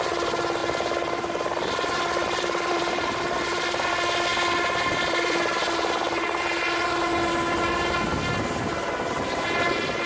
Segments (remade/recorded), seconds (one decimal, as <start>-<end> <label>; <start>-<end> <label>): 0.0-0.6 recorded; 0.6-3.9 remade; 3.9-4.3 recorded; 4.3-5.4 remade; 5.4-10.1 recorded